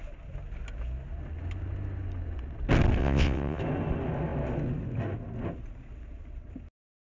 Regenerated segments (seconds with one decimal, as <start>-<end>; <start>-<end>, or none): 3.0-3.6